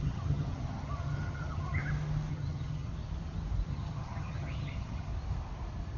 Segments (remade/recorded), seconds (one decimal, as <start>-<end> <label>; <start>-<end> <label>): 0.0-1.8 remade; 1.8-2.3 recorded; 2.3-2.9 remade; 2.9-3.7 recorded; 3.7-5.1 remade; 5.1-6.0 recorded